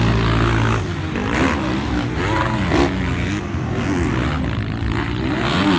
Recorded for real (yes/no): yes